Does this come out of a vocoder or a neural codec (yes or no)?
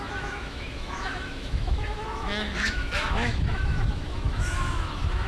yes